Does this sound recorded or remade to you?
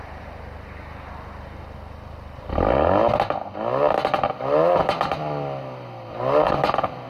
recorded